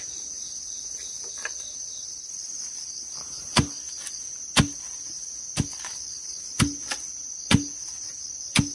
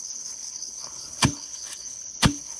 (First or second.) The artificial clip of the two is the second